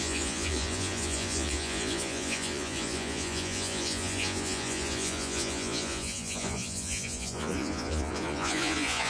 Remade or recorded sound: remade